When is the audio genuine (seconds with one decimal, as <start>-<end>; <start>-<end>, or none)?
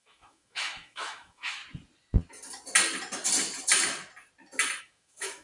1.6-4.8